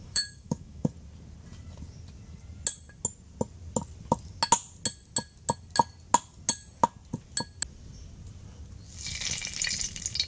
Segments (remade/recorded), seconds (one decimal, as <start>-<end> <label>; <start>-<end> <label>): 0.0-0.9 remade; 0.9-10.3 recorded